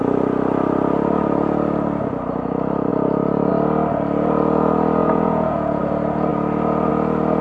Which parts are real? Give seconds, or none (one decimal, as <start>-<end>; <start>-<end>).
0.0-5.0; 5.8-7.4